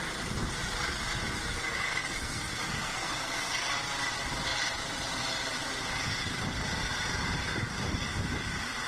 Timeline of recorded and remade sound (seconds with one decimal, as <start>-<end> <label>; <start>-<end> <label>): 0.0-1.7 recorded; 1.7-3.7 remade; 3.7-8.9 recorded